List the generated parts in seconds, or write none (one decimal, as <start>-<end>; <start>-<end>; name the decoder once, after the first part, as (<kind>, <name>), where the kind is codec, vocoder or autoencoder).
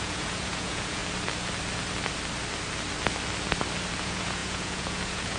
0.0-1.0 (vocoder, Vocos); 4.0-5.4